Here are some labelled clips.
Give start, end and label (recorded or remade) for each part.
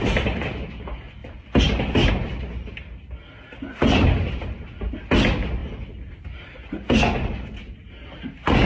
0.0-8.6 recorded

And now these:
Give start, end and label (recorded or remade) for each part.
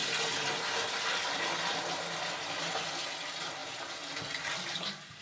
0.0-5.2 recorded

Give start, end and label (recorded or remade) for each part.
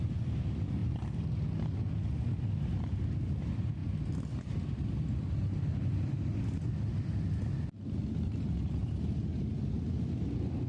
0.0-10.7 recorded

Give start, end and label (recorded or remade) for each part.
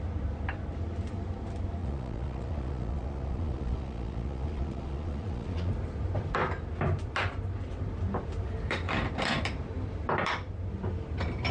0.0-1.8 recorded; 1.8-5.7 remade; 5.7-11.5 recorded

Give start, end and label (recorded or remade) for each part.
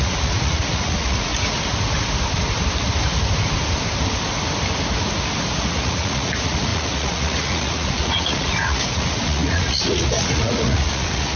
0.0-1.3 remade; 1.3-5.7 recorded; 5.7-11.4 remade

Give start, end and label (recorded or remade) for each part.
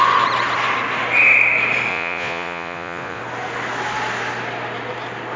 0.0-1.9 recorded; 1.9-3.2 remade; 3.2-5.4 recorded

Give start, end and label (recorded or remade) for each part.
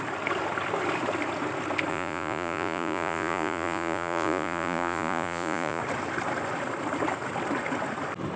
0.0-1.9 recorded; 1.9-5.8 remade; 5.8-8.4 recorded